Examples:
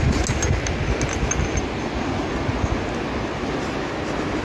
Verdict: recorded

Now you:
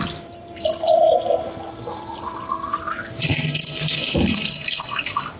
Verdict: remade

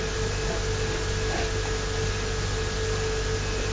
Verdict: recorded